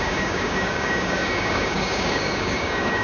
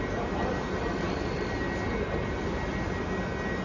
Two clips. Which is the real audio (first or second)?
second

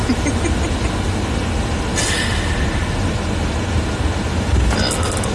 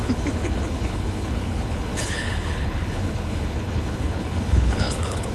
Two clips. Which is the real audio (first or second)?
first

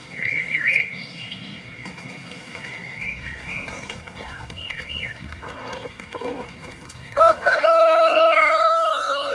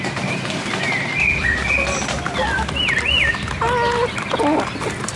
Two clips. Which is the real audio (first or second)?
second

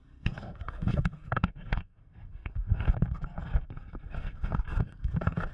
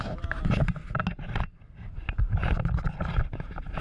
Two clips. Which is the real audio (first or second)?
second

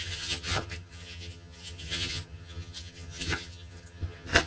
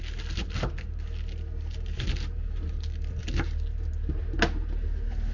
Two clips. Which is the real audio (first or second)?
second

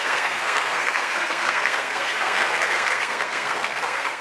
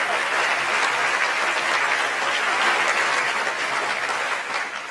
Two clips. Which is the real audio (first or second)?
second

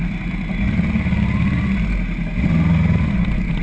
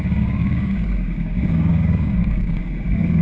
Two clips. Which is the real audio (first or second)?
first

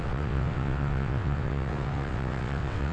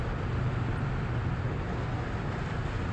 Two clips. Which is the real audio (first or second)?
second